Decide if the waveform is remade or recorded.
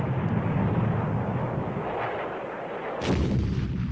recorded